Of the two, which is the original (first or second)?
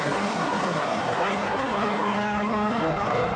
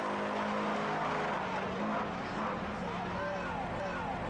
second